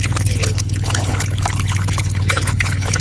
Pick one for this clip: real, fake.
fake